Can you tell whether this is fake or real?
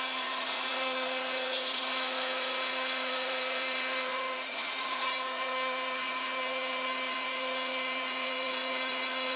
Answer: fake